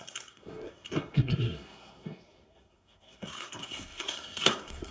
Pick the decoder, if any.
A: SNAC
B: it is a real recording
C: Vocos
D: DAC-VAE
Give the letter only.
A